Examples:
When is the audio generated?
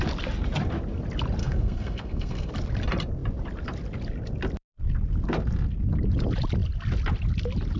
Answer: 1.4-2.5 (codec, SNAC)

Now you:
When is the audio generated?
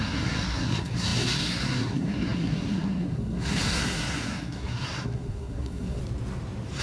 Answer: 0.0-6.0 (codec, SNAC)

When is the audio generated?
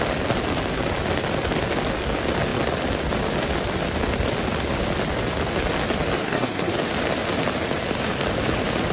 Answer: 6.2-6.7 (codec, SNAC)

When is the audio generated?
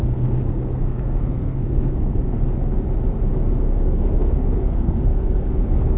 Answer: 0.0-2.4 (codec, SNAC); 3.6-6.0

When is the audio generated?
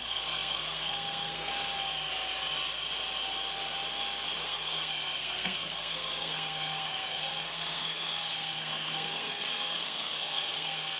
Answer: 0.0-1.5 (codec, SNAC); 4.4-11.0